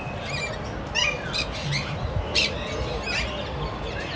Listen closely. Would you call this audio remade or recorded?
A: recorded